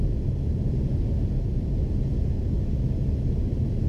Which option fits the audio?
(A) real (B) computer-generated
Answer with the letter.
A